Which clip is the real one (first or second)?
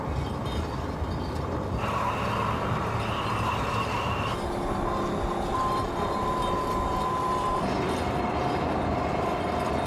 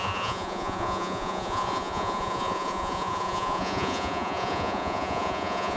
first